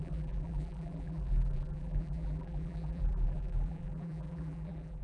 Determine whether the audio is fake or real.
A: fake